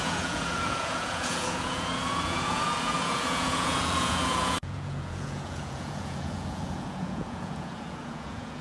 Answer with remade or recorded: remade